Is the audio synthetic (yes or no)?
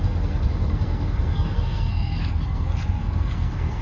yes